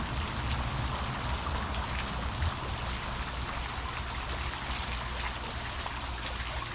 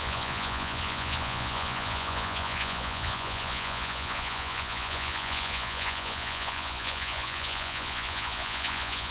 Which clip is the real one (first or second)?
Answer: first